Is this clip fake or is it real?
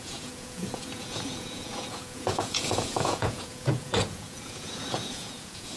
fake